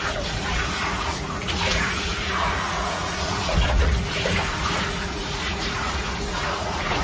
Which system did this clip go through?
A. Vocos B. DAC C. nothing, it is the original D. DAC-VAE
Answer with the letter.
A